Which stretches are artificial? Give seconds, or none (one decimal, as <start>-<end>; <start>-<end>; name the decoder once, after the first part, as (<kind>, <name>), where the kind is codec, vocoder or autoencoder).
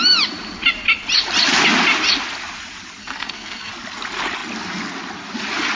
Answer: 3.0-3.7 (codec, SNAC)